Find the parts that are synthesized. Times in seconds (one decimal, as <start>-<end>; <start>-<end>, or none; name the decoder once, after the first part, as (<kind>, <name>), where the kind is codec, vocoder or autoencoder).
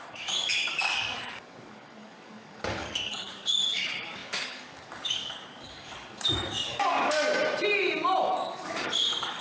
0.0-7.4 (codec, DAC); 8.2-9.4